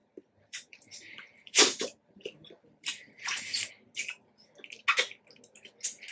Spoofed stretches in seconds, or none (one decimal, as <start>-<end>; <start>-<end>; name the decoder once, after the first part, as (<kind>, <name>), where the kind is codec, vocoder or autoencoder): 0.0-3.7 (vocoder, BigVGAN v2)